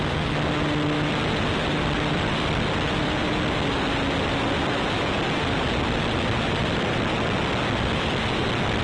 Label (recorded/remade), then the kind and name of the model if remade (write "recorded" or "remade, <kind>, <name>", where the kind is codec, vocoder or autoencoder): recorded